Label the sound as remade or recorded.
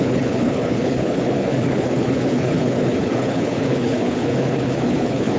remade